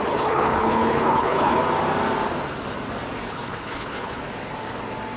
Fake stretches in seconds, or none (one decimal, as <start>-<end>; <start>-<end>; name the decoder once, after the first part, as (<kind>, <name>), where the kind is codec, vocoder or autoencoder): 0.0-1.6 (codec, HILCodec); 3.3-4.2